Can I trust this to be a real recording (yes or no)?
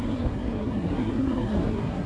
no